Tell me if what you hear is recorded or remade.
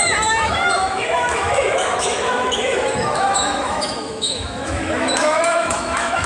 remade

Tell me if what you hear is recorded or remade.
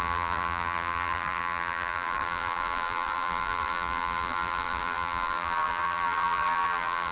remade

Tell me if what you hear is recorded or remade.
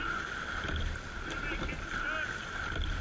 recorded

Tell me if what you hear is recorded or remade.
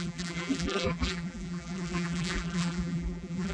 remade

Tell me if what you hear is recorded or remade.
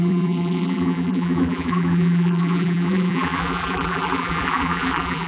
remade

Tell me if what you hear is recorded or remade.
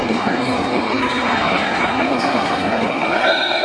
remade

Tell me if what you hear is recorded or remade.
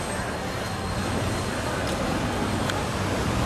recorded